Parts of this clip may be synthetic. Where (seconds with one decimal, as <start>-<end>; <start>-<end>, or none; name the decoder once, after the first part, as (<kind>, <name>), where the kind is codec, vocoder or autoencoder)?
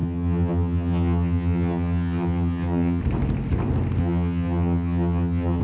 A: 0.0-3.0 (vocoder, HiFi-GAN); 4.0-5.6